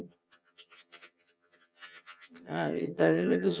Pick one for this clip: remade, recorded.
remade